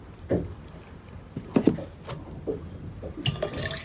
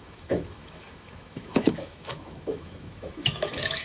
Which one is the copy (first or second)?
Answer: second